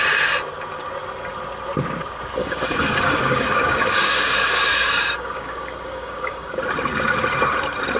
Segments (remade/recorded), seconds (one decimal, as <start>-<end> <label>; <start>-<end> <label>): 0.0-2.4 recorded; 2.4-6.6 remade; 6.6-8.0 recorded